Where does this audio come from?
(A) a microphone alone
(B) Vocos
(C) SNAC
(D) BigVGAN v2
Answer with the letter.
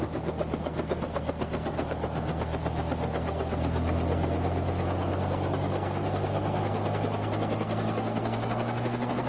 C